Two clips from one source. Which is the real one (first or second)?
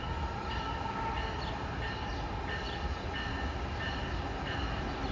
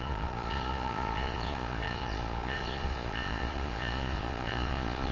first